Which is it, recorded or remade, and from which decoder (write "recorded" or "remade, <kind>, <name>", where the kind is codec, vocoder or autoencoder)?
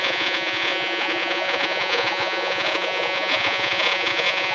remade, vocoder, Vocos